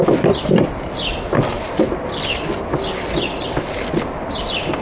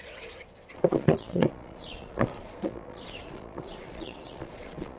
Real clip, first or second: first